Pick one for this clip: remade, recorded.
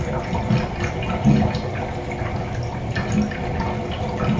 recorded